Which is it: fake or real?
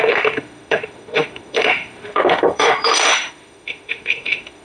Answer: fake